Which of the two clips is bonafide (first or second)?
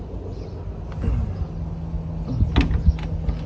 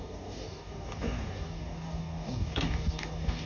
first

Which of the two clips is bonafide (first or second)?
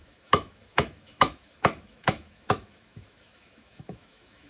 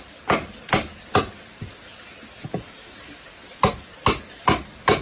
second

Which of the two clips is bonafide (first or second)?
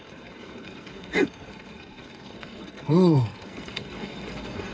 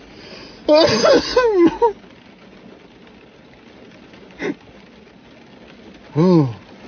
second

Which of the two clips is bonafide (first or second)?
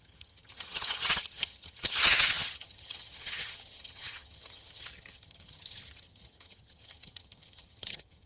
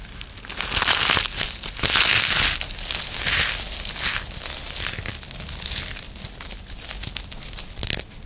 second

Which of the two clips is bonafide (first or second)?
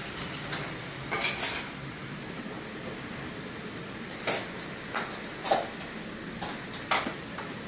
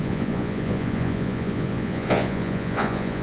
first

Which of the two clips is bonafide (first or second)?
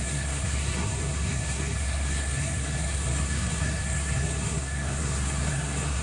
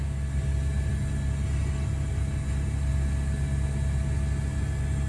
second